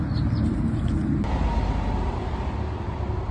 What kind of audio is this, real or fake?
real